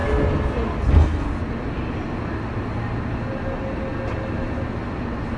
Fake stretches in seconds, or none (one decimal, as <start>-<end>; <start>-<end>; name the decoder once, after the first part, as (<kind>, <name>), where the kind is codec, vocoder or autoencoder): none